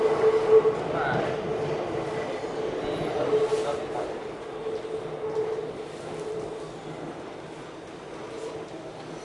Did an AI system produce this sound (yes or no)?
no